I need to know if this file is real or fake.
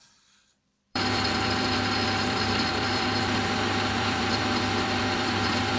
fake